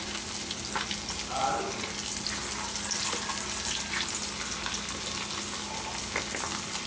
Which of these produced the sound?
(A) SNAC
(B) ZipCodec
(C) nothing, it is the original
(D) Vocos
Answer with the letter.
C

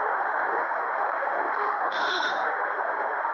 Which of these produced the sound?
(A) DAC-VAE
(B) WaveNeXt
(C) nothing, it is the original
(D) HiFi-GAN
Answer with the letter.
A